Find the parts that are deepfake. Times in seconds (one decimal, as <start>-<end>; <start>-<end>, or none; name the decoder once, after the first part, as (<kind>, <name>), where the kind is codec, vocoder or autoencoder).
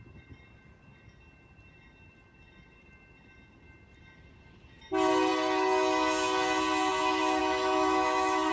7.4-8.5 (autoencoder, DAC-VAE)